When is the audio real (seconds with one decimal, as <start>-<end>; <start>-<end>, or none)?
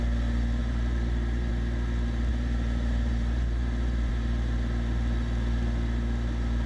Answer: 0.0-0.6; 1.5-2.3; 4.1-6.7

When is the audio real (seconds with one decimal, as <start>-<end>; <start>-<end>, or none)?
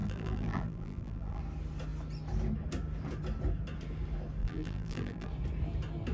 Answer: 1.4-4.4; 5.3-6.1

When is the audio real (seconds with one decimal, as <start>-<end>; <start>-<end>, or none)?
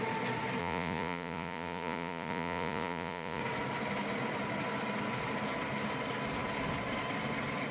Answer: 0.0-0.6; 3.4-7.7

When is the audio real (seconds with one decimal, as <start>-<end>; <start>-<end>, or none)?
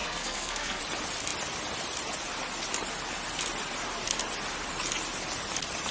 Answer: 0.8-5.9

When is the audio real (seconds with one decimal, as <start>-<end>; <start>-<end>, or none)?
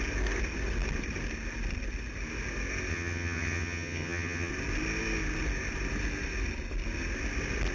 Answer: 0.0-2.9; 4.5-7.7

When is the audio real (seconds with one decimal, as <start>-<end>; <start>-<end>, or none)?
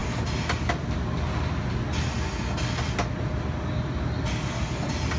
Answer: 0.0-5.2